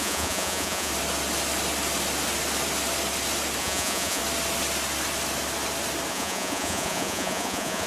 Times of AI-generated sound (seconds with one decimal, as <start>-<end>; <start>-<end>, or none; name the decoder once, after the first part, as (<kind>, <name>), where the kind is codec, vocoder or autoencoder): 0.0-0.9 (vocoder, Vocos); 3.6-4.2; 6.1-7.9